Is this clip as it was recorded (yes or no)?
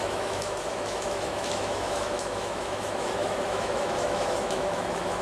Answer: no